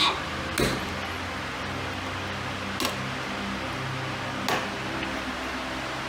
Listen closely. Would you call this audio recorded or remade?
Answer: recorded